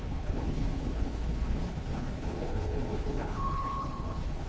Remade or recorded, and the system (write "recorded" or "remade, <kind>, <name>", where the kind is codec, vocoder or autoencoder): remade, codec, HILCodec